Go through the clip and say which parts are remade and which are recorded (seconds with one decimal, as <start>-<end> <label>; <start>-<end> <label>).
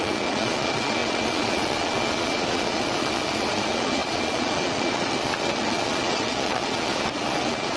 0.0-7.8 remade